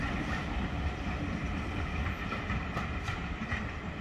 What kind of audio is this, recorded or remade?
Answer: recorded